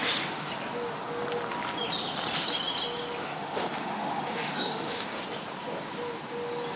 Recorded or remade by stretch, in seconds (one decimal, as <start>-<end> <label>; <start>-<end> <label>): 0.0-0.5 remade; 0.5-3.2 recorded; 3.2-5.2 remade; 5.2-6.8 recorded